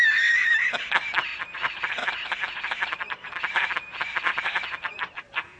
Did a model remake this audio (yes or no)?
yes